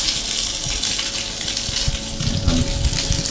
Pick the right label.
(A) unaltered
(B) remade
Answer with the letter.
A